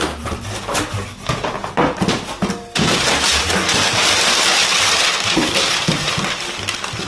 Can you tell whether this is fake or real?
real